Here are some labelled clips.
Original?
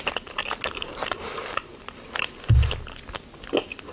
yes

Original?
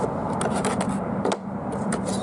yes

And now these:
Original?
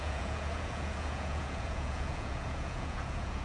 no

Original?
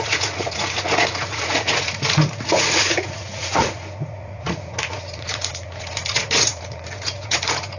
no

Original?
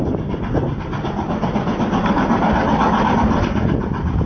yes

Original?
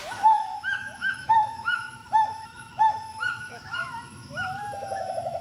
no